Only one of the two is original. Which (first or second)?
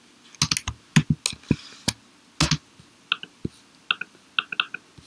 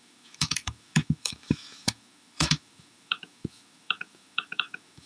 first